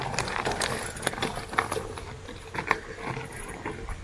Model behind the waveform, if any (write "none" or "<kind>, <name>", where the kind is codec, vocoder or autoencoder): none